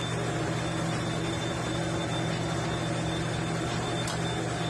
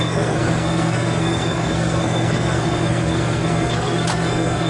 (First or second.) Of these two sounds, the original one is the first